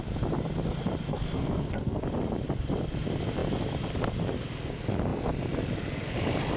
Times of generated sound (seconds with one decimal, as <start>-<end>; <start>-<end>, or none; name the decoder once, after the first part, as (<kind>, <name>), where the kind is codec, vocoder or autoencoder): 1.1-2.0 (codec, SNAC)